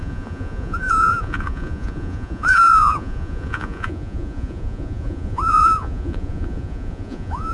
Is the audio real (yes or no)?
no